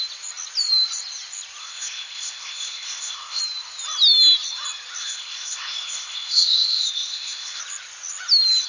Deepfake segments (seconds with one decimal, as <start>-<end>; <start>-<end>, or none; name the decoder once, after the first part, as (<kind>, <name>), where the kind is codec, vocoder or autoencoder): 1.6-3.4 (codec, ZipCodec); 5.0-7.6